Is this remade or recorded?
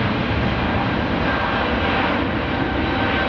recorded